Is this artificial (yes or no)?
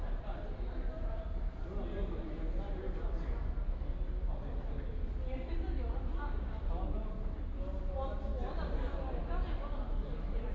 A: no